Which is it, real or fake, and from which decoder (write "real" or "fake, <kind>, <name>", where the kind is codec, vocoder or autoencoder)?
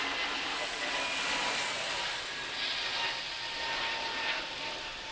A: real